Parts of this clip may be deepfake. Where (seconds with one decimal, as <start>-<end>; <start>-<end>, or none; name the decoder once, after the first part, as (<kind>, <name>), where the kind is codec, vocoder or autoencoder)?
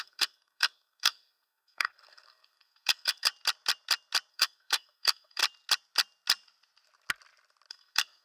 0.0-3.3 (codec, SNAC); 4.3-5.4; 7.7-8.2